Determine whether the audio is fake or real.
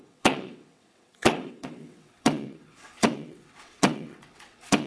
fake